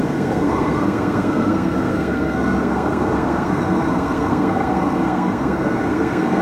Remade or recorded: remade